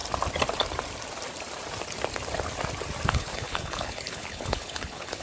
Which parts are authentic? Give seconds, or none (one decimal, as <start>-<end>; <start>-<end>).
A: 0.0-3.1